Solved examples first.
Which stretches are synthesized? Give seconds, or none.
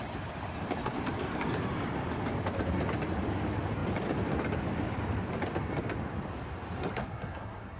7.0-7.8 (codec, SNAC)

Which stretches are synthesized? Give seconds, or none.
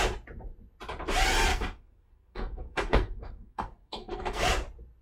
1.5-4.5 (codec, SNAC)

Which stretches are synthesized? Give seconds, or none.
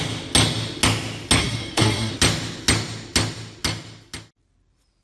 1.4-2.1 (codec, SNAC)